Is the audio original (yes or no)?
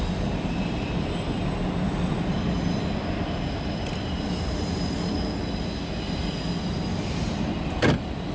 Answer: yes